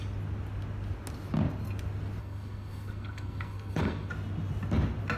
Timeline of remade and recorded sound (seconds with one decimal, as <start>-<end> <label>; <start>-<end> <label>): 0.0-2.2 recorded; 2.2-4.1 remade; 4.1-5.2 recorded